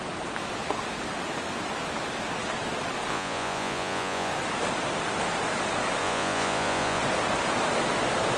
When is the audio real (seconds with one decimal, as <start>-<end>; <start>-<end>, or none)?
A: 0.0-3.1; 4.3-6.0; 7.0-8.4